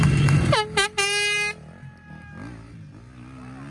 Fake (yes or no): no